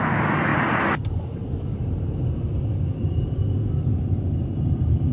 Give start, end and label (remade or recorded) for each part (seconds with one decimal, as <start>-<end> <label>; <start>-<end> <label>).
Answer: 0.0-5.1 recorded